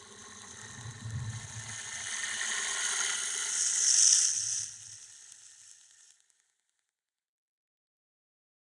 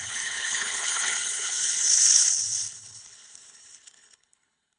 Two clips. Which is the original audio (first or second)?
first